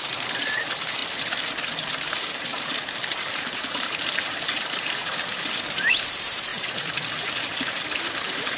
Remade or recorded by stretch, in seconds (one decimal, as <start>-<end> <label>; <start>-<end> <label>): 0.0-1.0 remade; 1.0-2.1 recorded; 2.1-2.5 remade; 2.5-3.3 recorded; 3.3-8.6 remade